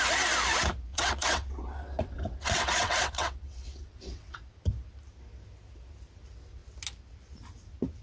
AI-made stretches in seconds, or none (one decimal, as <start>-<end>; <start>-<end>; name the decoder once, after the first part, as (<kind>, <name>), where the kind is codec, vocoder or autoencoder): 0.9-4.4 (vocoder, WaveNeXt)